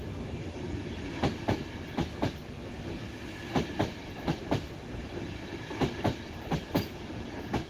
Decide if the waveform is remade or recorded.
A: recorded